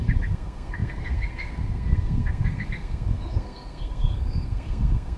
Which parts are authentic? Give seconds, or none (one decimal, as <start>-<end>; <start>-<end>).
none